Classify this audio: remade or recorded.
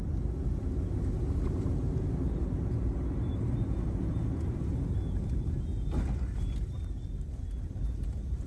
recorded